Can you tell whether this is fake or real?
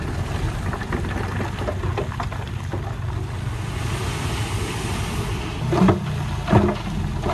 real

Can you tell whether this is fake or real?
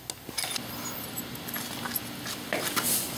real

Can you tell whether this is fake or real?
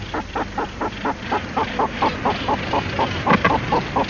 real